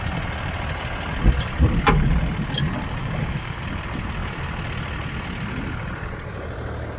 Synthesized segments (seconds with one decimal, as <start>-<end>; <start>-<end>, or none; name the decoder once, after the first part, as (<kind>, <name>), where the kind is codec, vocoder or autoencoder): 3.0-3.6 (codec, DAC)

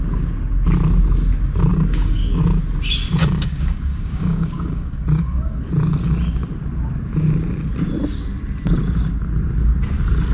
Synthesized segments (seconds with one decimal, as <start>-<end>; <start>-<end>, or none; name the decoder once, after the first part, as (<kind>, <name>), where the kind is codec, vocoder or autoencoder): 1.7-2.4 (codec, DAC); 3.2-5.4

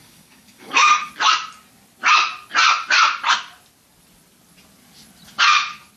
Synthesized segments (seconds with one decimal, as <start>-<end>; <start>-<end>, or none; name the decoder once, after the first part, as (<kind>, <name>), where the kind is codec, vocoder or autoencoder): 0.0-1.1 (codec, DAC)

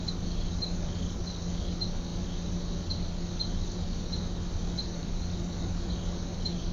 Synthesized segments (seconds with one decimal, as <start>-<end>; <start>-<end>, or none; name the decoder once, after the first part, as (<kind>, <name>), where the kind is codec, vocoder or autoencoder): 0.0-6.7 (codec, DAC)

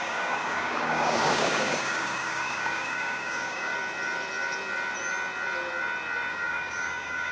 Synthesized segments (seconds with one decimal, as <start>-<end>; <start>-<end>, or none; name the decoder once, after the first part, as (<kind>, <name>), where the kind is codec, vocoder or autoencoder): 0.0-3.7 (codec, DAC); 6.3-7.3

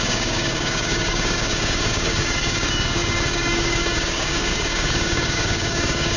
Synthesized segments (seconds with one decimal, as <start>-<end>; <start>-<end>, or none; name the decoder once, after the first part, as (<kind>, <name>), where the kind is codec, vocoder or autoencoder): 0.0-6.2 (codec, DAC)